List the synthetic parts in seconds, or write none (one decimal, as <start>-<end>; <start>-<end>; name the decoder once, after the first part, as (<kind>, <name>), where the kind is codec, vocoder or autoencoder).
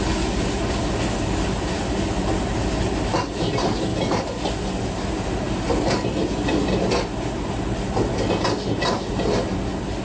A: none